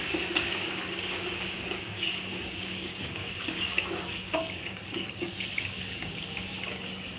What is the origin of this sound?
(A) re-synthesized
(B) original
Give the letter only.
A